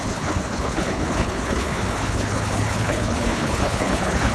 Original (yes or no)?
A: no